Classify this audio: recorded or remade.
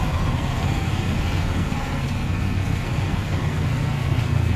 remade